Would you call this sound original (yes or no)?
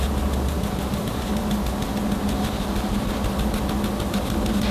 yes